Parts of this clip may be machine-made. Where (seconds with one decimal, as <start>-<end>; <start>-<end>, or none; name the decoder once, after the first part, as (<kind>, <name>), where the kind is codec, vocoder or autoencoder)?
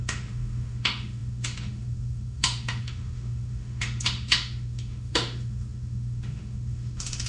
0.0-7.3 (autoencoder, DAC-VAE)